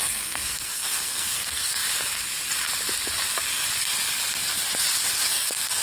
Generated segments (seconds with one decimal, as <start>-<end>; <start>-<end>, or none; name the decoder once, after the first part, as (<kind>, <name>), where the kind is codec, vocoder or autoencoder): 0.0-1.8 (codec, SNAC); 5.3-5.8

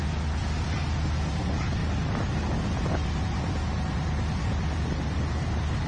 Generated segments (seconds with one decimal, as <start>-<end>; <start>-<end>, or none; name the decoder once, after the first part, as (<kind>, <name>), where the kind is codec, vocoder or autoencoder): none